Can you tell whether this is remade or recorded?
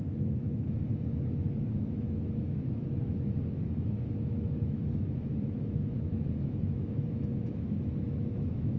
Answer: remade